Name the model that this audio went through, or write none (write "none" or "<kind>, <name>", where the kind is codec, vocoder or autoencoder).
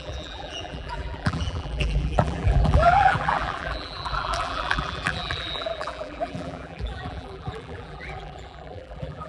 vocoder, BigVGAN v2